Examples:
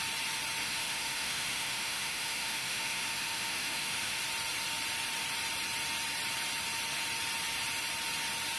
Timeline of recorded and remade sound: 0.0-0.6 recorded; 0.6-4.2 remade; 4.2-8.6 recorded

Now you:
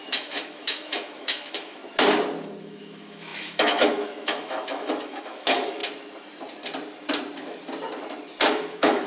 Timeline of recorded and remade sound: 0.0-1.8 remade; 1.8-2.6 recorded; 2.6-5.8 remade; 5.8-8.6 recorded; 8.6-9.1 remade